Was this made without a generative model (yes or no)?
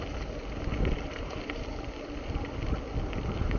yes